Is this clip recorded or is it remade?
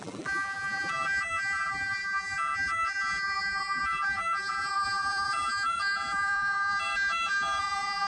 remade